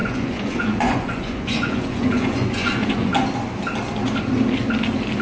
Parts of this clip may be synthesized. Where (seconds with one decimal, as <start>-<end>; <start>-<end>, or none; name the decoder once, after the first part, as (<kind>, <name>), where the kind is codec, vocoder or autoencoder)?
0.0-3.1 (vocoder, Vocos)

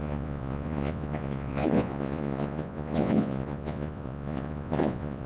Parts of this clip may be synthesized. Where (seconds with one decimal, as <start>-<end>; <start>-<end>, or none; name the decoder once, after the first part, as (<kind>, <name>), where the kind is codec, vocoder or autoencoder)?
0.0-5.3 (vocoder, Vocos)

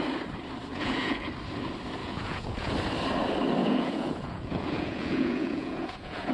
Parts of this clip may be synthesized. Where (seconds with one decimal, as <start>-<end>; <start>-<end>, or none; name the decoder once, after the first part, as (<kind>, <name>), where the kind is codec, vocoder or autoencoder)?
0.7-1.3 (vocoder, Vocos); 2.0-2.7; 3.6-6.3

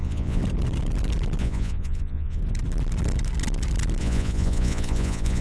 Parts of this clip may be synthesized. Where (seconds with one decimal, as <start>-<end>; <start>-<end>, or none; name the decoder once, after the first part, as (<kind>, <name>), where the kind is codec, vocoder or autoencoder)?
0.0-0.4 (vocoder, Vocos); 1.4-2.4; 4.0-5.4

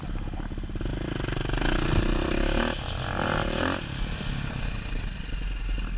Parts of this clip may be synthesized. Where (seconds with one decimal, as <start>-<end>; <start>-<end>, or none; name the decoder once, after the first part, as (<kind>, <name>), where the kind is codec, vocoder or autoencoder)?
none

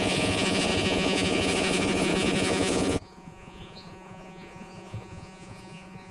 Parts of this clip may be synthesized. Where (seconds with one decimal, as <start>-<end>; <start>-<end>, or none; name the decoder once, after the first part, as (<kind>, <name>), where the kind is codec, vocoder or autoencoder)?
0.0-6.1 (vocoder, Vocos)

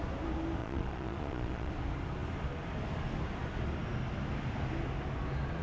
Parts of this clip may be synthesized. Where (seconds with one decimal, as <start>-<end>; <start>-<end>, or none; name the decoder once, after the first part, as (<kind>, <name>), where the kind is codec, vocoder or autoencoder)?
0.6-1.7 (vocoder, Vocos)